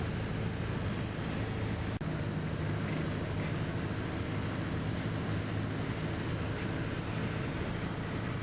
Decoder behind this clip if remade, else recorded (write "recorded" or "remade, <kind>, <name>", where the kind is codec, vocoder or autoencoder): recorded